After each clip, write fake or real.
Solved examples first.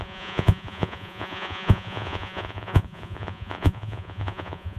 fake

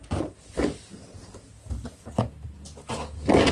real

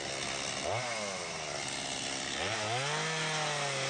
real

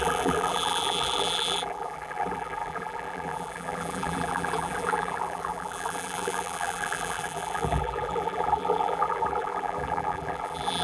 fake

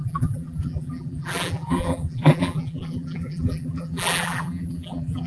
fake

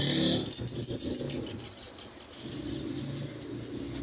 real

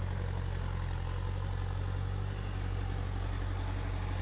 real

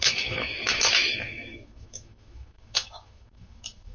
fake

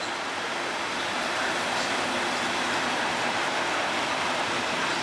real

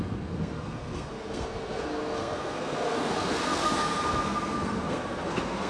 fake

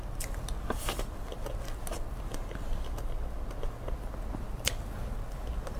real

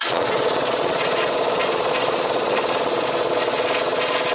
fake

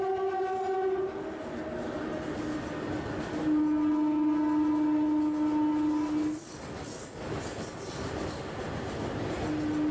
real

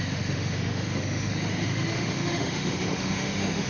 fake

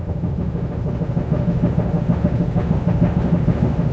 fake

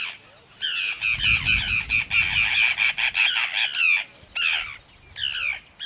real